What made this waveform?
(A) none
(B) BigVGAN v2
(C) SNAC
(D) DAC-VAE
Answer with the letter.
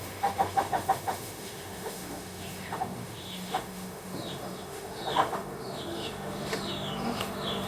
D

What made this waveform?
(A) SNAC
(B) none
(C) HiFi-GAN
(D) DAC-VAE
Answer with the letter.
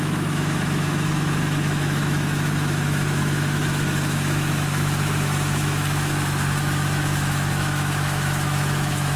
D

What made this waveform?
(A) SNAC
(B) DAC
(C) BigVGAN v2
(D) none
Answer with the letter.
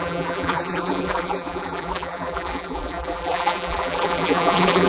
C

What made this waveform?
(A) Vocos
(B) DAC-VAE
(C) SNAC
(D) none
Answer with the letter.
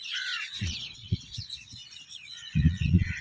A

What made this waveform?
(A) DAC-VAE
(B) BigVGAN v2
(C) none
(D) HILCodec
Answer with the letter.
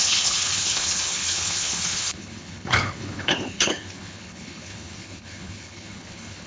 D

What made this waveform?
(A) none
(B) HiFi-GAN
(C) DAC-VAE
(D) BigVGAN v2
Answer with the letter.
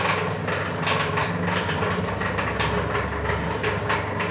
A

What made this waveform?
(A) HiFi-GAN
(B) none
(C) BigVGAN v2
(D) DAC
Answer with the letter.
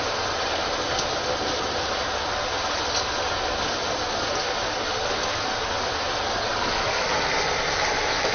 B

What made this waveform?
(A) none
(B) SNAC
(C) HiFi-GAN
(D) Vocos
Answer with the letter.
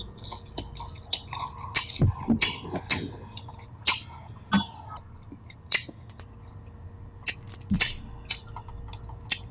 A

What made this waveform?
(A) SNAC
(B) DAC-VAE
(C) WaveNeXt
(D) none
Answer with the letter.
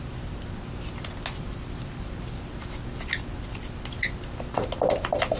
D